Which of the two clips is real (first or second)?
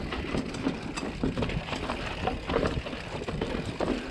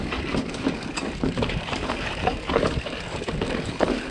first